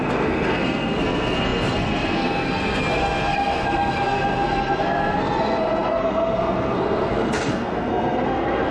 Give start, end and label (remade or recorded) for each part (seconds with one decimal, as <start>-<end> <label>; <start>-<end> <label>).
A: 0.0-8.7 remade